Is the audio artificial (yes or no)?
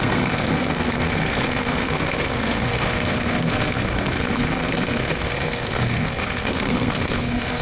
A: yes